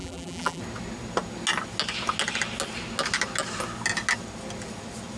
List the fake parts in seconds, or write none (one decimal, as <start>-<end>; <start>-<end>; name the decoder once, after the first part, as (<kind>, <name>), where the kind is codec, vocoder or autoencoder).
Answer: 0.0-0.6 (vocoder, BigVGAN v2)